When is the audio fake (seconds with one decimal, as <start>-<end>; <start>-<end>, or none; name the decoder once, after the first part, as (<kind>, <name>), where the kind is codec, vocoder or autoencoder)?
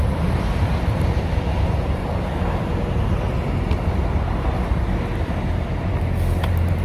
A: 0.0-2.0 (vocoder, BigVGAN v2); 5.9-6.8